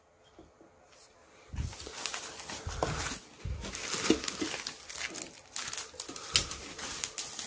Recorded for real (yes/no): yes